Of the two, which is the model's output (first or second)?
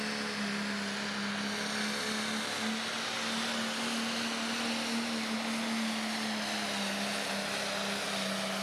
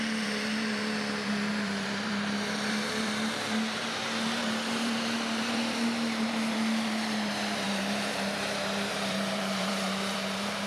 second